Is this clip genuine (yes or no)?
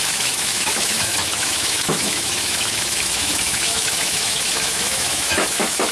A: no